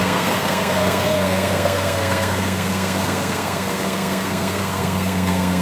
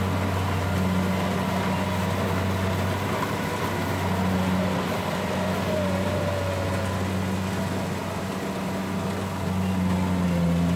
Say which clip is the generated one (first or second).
first